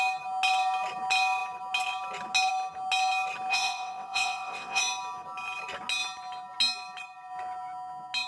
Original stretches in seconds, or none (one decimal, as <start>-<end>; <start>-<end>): 0.0-3.5; 4.8-8.3

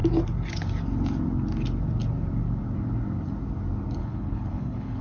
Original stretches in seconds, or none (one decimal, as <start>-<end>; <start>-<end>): 0.0-4.0